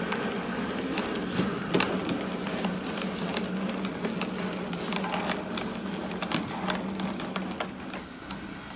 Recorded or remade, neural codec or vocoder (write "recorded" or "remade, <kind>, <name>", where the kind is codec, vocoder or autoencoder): recorded